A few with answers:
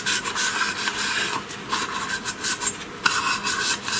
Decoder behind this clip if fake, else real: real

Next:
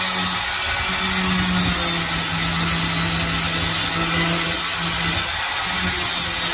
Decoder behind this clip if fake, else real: real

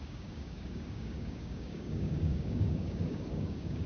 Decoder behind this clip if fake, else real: fake, codec, DAC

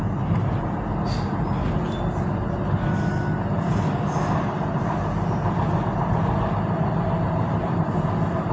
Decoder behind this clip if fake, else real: real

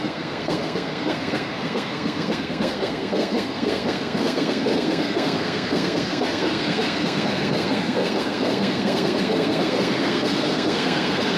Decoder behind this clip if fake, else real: fake, codec, SNAC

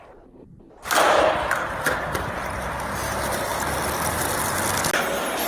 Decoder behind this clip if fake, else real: real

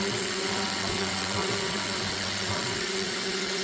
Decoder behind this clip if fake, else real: fake, vocoder, WaveNeXt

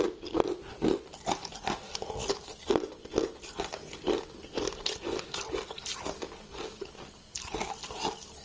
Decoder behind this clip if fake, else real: real